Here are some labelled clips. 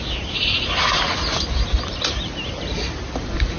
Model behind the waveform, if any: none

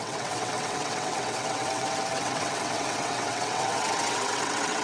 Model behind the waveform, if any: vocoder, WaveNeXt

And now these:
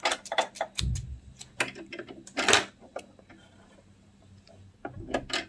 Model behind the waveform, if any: none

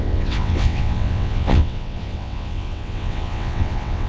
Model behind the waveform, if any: vocoder, WaveNeXt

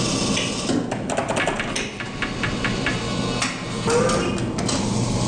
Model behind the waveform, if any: none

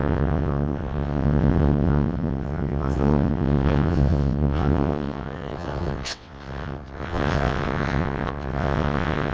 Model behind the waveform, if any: vocoder, WaveNeXt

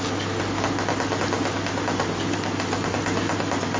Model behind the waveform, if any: none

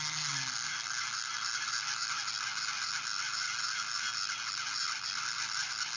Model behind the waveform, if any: none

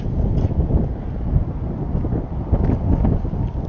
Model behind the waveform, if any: none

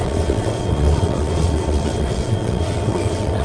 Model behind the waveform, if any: vocoder, WaveNeXt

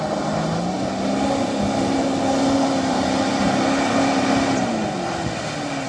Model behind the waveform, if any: none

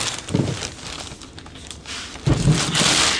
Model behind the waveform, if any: none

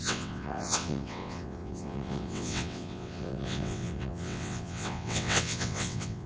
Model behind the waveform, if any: vocoder, WaveNeXt